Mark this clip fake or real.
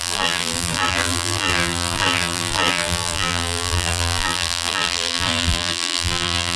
fake